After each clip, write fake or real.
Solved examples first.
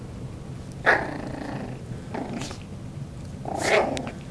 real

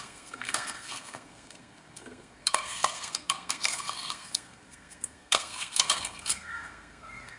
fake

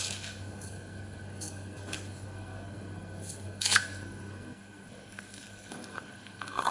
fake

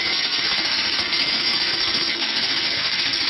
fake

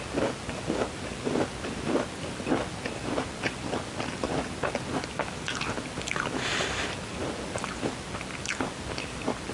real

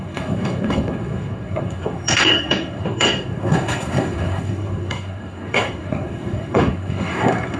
fake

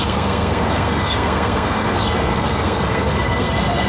fake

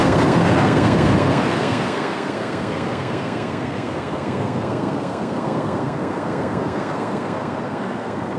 fake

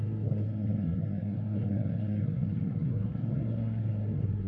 fake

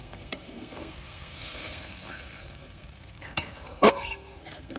fake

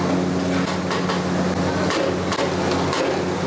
real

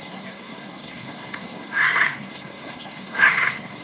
fake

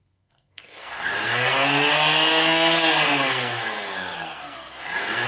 fake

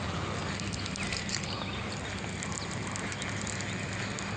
real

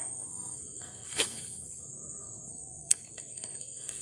fake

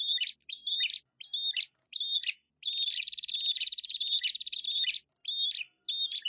real